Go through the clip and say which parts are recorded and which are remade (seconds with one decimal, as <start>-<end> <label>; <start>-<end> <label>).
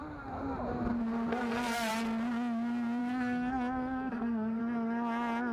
0.0-1.3 recorded; 1.3-1.9 remade; 1.9-3.0 recorded; 3.0-4.6 remade; 4.6-5.5 recorded